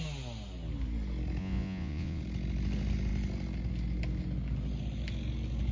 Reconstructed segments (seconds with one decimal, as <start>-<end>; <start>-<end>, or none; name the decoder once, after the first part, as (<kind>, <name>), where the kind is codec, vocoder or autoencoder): 1.4-2.2 (vocoder, Vocos)